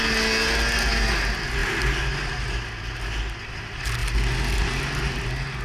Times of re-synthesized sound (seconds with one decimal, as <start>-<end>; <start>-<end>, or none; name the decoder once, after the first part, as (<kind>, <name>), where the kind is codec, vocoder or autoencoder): none

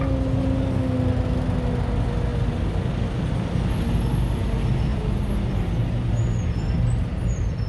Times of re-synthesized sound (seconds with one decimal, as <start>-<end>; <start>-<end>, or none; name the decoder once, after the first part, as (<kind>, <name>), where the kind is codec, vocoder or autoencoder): none

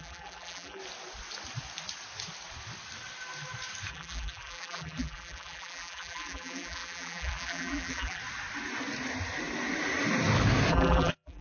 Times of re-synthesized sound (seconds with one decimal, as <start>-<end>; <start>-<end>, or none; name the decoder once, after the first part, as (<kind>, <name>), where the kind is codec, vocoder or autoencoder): 0.0-0.8 (vocoder, BigVGAN v2); 3.9-8.2; 10.7-11.4

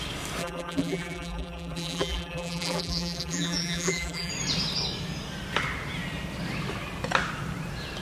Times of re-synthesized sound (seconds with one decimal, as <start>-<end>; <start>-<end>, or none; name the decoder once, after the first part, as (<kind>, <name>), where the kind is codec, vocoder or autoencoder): 0.4-4.3 (vocoder, BigVGAN v2)

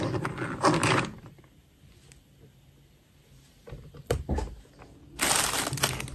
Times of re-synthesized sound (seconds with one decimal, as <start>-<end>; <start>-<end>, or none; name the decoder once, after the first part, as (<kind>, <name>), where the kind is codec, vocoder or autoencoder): 0.8-1.4 (vocoder, BigVGAN v2); 3.2-4.7

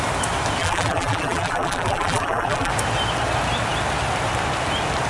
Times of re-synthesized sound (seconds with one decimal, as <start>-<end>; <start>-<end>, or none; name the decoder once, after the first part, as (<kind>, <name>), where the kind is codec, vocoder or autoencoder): 0.6-2.7 (vocoder, BigVGAN v2)